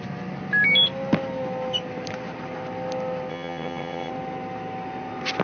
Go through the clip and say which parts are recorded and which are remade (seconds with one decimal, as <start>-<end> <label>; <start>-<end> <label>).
0.0-3.3 recorded; 3.3-4.1 remade; 4.1-5.4 recorded